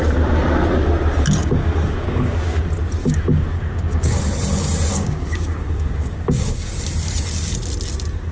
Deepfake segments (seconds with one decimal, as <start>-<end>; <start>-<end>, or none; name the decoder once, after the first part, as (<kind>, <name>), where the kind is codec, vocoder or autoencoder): 1.4-2.6 (codec, DAC); 3.0-4.2; 4.9-6.7